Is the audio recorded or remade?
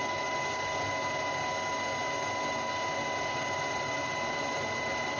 recorded